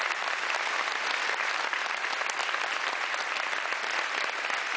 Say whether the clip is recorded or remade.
recorded